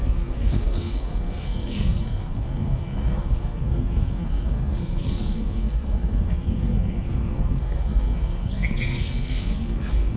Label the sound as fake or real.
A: fake